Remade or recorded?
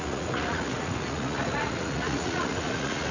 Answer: remade